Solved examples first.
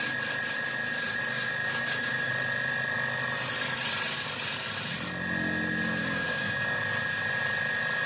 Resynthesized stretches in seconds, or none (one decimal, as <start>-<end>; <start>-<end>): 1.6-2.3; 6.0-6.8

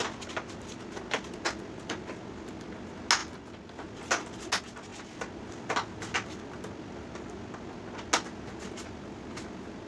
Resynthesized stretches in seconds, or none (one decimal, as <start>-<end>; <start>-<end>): none

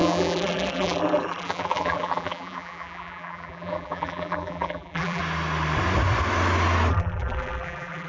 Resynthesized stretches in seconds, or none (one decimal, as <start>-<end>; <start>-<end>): 0.0-5.2; 6.9-8.1

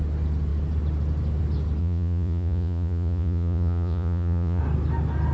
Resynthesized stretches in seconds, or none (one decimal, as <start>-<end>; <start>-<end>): 1.8-4.6

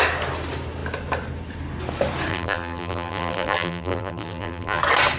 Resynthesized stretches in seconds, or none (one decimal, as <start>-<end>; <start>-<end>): 2.3-4.8

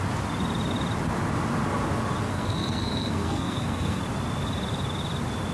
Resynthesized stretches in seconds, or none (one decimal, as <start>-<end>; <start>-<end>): 2.3-4.0

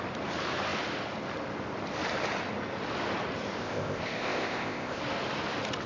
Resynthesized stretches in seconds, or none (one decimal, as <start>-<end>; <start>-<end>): 3.6-5.0

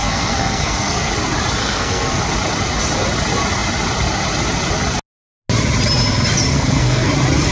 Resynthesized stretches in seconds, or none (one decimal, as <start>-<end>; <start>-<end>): 0.0-1.1; 1.6-2.2; 6.5-7.1